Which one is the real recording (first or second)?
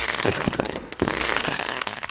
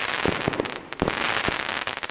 second